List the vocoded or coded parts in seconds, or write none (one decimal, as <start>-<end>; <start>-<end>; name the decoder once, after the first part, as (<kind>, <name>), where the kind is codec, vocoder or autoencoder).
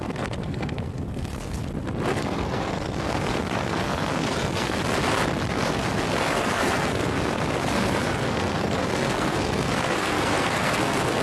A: 0.0-1.6 (codec, SNAC); 2.1-4.8; 5.5-11.2